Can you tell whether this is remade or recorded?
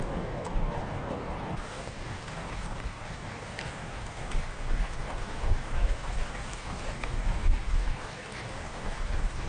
remade